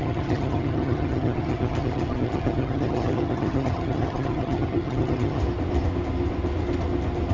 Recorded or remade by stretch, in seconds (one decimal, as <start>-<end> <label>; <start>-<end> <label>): 0.0-5.4 remade; 5.4-7.3 recorded